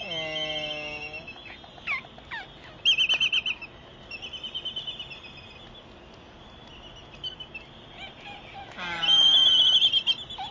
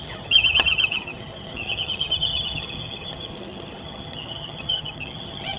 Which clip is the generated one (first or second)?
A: second